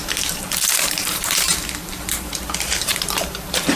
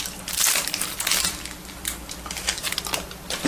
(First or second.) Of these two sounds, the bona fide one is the second